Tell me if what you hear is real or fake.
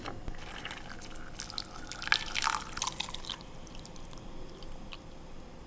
real